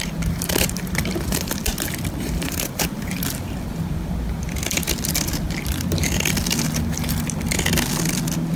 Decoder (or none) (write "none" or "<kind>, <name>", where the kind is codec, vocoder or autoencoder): none